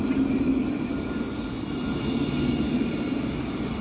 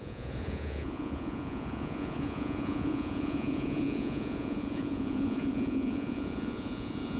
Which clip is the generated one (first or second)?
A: second